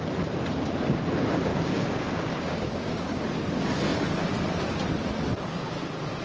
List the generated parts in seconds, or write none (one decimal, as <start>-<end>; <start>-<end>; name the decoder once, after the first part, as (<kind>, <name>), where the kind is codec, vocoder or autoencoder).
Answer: 1.5-3.2 (codec, DAC)